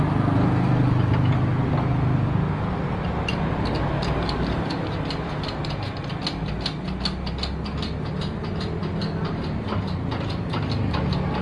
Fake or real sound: real